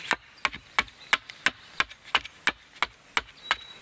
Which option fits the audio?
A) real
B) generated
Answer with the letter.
A